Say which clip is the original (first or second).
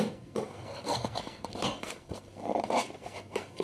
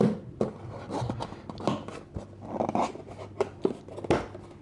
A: second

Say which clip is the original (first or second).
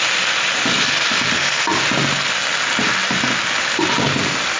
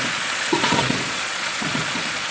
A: first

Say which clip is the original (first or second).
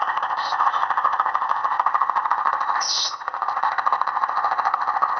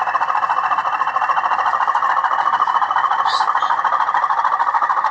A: second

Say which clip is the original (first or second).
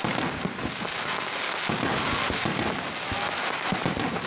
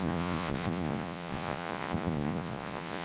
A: first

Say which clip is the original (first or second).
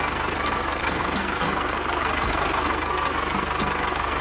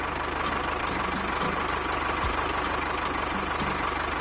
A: second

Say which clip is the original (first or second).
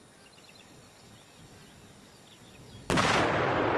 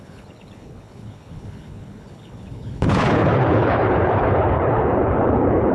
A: first